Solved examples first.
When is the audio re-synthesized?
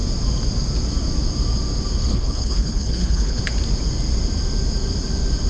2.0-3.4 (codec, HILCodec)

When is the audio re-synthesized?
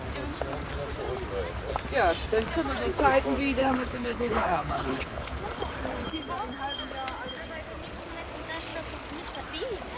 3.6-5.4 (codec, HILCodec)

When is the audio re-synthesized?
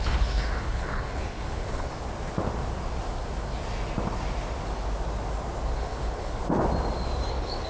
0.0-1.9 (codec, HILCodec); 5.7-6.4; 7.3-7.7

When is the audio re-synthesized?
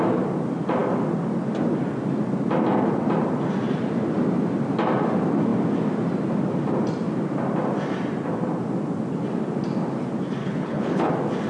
10.4-11.1 (codec, HILCodec)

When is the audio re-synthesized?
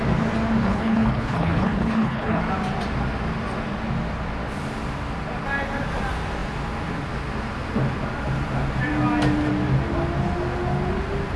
0.6-2.4 (codec, HILCodec)